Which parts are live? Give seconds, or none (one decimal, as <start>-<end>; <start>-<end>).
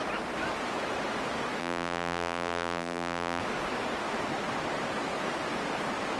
0.0-1.6; 3.4-6.2